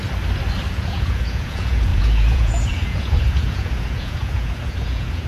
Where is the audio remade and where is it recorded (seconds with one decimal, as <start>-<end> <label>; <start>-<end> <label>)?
0.0-0.7 recorded; 0.7-5.3 remade